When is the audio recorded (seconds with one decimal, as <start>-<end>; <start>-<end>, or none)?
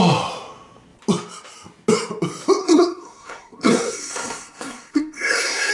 0.0-2.6